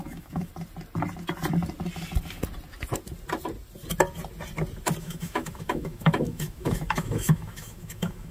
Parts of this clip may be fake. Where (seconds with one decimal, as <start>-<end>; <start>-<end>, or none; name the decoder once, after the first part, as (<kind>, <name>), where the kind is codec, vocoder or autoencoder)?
0.0-0.5 (autoencoder, DAC-VAE); 5.0-8.3